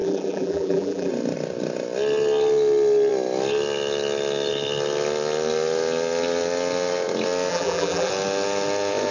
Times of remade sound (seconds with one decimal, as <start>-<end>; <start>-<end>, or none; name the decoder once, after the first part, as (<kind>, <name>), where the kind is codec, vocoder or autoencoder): 0.0-1.1 (vocoder, BigVGAN v2); 7.5-8.1